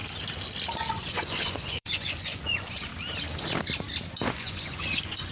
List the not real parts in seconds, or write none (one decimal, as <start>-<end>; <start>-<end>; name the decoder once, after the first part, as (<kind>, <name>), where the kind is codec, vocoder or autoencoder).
0.9-2.9 (vocoder, Vocos); 4.2-5.3